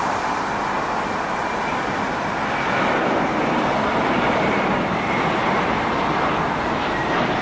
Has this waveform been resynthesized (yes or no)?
no